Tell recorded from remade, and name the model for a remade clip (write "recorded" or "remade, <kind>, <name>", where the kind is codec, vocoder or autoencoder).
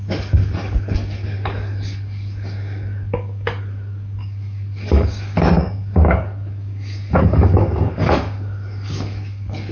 remade, codec, DAC